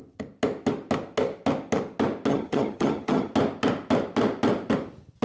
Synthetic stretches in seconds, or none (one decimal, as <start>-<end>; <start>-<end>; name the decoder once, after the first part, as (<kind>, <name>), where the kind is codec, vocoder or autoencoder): 2.3-3.3 (vocoder, HiFi-GAN)